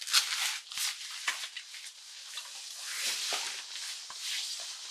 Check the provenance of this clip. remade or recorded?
recorded